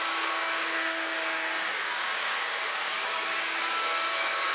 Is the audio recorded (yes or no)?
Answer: no